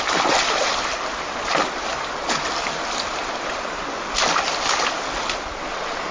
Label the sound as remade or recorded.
recorded